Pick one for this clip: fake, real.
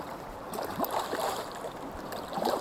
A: fake